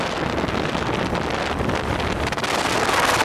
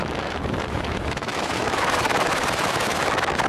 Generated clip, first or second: second